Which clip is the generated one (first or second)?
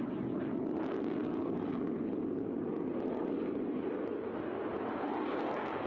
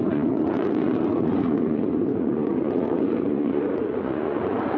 second